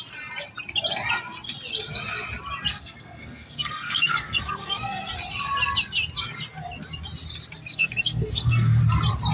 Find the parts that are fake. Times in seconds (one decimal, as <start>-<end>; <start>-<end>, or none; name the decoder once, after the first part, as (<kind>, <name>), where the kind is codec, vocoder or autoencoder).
2.7-5.1 (codec, SNAC); 7.7-8.8